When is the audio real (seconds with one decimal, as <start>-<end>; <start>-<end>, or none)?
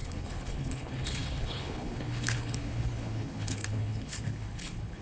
none